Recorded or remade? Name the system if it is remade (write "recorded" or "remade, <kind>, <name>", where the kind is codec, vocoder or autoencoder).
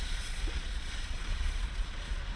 remade, vocoder, Vocos